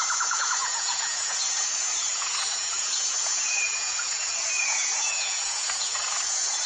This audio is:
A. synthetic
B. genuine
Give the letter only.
A